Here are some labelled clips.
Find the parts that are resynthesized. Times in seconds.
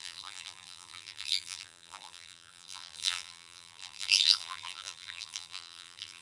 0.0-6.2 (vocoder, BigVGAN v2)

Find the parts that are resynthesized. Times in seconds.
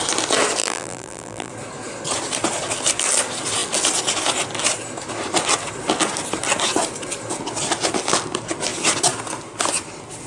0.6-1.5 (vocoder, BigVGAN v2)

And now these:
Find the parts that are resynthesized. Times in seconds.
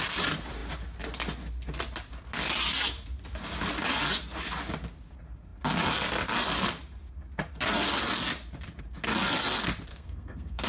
9.9-10.7 (codec, SNAC)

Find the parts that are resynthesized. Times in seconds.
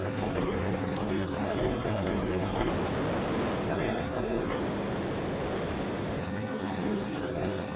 0.0-2.7 (codec, SNAC); 3.7-4.6; 6.2-7.8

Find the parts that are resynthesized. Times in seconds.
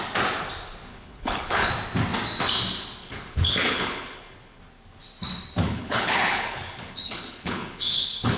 0.9-1.7 (codec, HILCodec); 3.0-4.6; 5.6-8.4